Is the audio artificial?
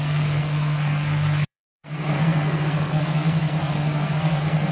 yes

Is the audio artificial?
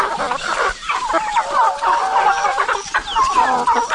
no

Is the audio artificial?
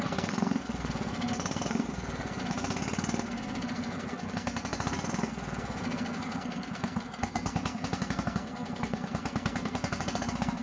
yes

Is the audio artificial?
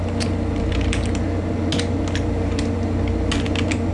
no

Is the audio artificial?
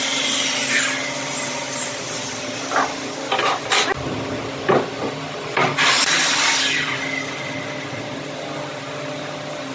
no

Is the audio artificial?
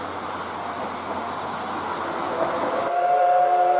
no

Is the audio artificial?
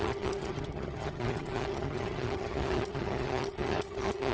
yes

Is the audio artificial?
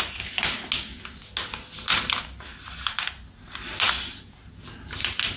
no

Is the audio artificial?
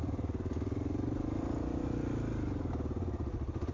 no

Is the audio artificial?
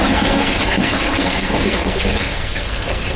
yes